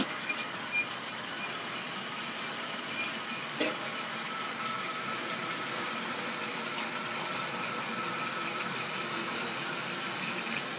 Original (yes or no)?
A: yes